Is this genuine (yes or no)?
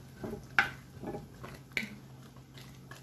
yes